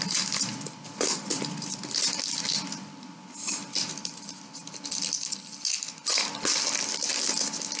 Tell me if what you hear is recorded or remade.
recorded